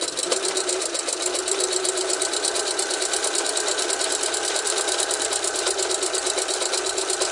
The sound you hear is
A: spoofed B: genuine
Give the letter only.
A